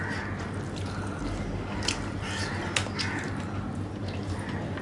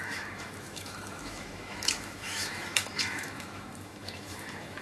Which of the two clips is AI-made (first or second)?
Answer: second